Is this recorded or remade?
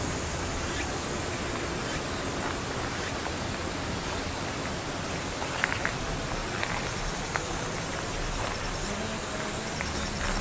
recorded